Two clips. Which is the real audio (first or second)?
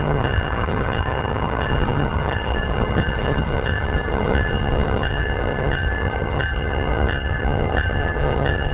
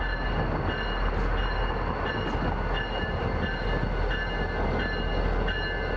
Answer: second